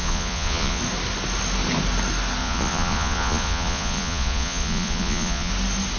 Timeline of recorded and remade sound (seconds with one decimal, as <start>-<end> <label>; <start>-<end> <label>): 0.0-0.8 remade; 0.8-2.4 recorded; 2.4-5.5 remade; 5.5-6.0 recorded